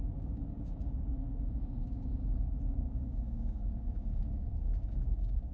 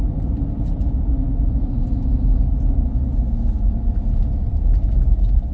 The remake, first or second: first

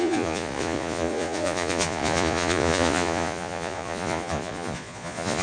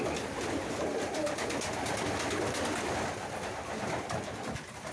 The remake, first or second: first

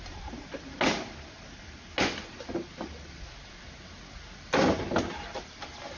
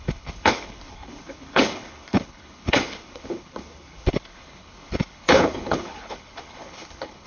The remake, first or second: second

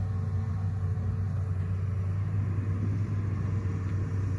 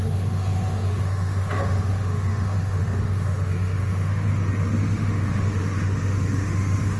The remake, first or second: second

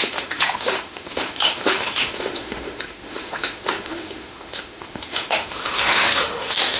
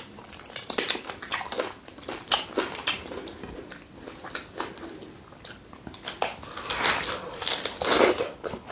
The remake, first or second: first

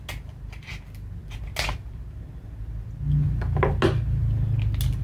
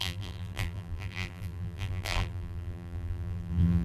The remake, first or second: second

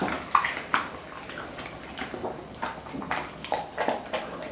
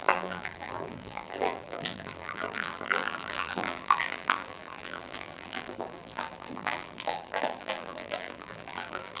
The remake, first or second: second